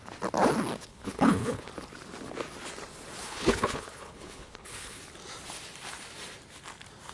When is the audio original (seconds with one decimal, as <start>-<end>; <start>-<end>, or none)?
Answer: 0.0-0.9; 1.7-3.2; 5.0-7.1

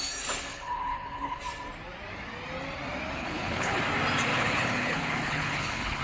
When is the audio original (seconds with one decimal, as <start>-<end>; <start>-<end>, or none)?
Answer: 0.0-0.5; 1.4-3.2; 3.8-4.3

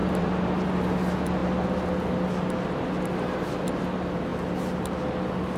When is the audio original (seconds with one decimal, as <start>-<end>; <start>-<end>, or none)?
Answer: 0.7-5.6

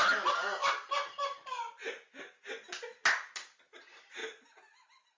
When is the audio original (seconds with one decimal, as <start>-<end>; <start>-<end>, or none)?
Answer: 0.0-0.6; 1.8-4.2

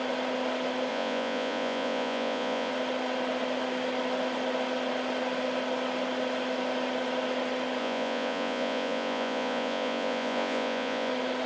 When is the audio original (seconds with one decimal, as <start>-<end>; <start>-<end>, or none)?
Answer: 0.0-0.9; 2.7-7.8; 11.1-11.5

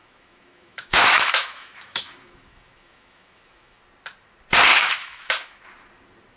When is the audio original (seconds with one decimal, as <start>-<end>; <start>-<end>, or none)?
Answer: 3.8-4.7; 5.6-6.4